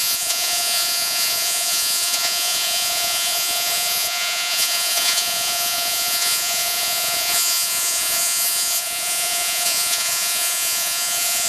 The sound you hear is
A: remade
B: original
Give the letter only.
A